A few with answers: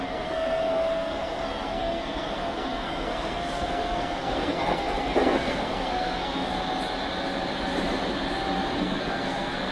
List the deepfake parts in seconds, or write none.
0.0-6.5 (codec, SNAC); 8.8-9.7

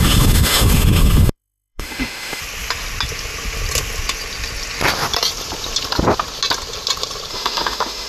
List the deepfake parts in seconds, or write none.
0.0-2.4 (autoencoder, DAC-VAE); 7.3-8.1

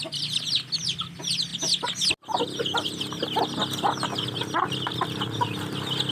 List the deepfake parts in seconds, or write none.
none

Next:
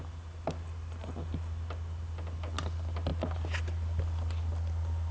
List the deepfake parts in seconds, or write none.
none

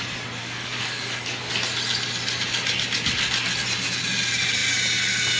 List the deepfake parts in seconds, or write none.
0.4-1.4 (codec, DAC)

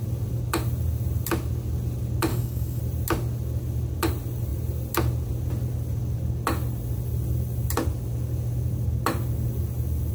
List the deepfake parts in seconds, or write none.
2.3-2.8 (codec, DAC)